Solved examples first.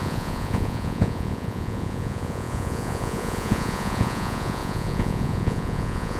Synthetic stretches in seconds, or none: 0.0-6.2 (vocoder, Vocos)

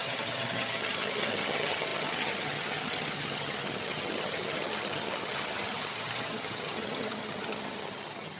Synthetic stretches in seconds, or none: 0.0-8.4 (vocoder, HiFi-GAN)